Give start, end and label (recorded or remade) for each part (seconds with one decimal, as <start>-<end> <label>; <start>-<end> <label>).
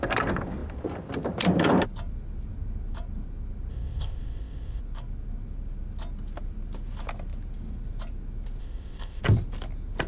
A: 0.0-3.7 recorded; 3.7-4.8 remade; 4.8-8.6 recorded; 8.6-9.2 remade; 9.2-10.1 recorded